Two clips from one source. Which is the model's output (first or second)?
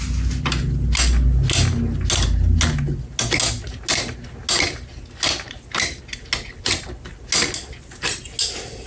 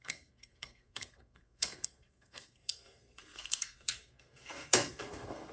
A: second